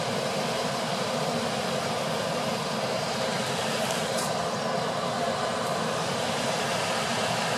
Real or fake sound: fake